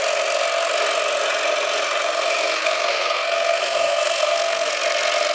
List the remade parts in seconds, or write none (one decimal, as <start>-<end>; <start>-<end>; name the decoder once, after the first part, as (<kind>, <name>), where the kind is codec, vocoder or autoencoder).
2.6-4.7 (codec, SNAC)